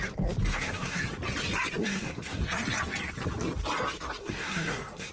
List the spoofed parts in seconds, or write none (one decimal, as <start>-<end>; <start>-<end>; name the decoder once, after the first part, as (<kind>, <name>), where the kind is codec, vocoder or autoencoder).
0.5-1.0 (codec, SNAC); 1.8-2.4; 4.2-5.1